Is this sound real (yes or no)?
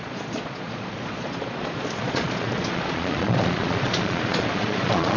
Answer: no